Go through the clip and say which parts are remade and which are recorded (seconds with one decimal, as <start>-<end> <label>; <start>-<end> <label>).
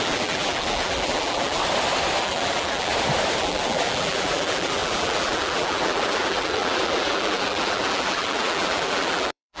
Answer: 0.0-1.6 remade; 1.6-2.2 recorded; 2.2-2.9 remade; 2.9-3.4 recorded; 3.4-9.6 remade